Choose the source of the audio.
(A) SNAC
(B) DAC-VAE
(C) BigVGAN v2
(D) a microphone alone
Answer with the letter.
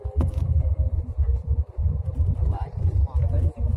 D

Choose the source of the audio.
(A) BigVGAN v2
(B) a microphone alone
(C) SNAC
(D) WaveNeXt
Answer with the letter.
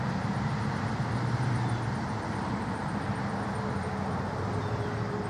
B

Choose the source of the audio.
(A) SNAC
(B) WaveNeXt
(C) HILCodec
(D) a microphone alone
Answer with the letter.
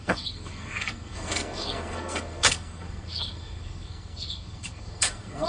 A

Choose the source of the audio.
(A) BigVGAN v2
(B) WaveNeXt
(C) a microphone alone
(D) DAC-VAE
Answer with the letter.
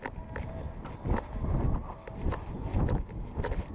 C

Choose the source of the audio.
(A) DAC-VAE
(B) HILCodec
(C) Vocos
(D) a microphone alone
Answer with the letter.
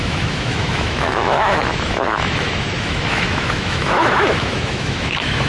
A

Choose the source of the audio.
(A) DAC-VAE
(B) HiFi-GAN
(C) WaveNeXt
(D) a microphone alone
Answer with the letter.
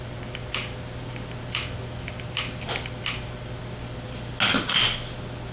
D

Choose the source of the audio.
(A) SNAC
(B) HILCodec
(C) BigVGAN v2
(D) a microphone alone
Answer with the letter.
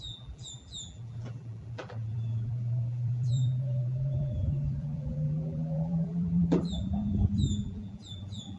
C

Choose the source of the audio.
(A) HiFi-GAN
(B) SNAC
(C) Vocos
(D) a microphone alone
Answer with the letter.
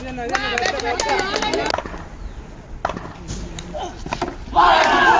D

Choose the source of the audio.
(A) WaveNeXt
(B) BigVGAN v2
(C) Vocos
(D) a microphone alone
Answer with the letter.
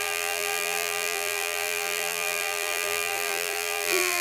B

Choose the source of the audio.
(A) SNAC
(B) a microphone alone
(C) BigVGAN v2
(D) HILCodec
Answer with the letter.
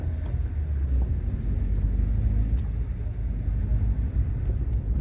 B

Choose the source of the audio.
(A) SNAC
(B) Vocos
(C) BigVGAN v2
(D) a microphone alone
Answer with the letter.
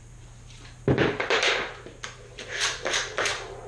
C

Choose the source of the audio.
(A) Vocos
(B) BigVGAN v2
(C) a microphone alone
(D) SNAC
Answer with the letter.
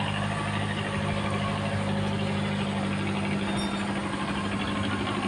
C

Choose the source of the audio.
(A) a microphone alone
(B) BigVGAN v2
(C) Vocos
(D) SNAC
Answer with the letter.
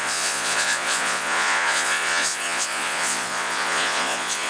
C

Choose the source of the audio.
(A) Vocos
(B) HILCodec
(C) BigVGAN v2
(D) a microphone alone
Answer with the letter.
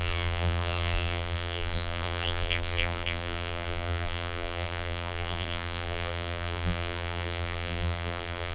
C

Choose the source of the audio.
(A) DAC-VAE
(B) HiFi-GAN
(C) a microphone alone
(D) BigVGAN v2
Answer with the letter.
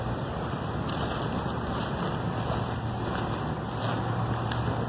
C